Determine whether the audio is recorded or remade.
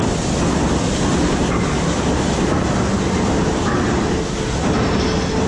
recorded